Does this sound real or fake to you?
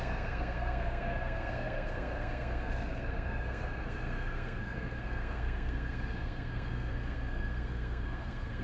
fake